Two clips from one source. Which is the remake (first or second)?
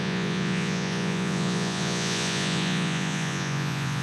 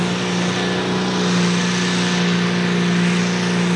first